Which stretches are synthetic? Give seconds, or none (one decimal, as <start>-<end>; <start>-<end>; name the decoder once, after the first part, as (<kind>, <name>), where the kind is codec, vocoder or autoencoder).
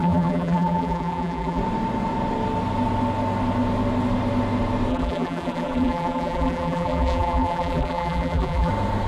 0.0-1.6 (vocoder, BigVGAN v2); 4.9-8.7